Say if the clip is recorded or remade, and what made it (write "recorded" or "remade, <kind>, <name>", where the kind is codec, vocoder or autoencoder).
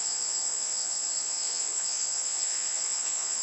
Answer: remade, vocoder, Vocos